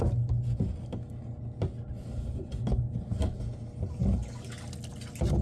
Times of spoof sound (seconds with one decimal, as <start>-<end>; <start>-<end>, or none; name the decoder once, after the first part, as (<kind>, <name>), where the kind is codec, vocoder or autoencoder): none